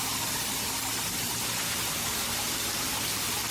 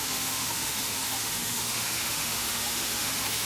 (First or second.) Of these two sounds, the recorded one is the first